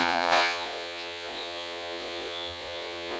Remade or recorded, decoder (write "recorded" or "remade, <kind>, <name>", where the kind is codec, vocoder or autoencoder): remade, vocoder, Vocos